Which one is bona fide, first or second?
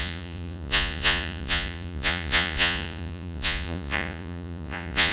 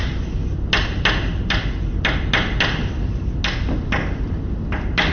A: second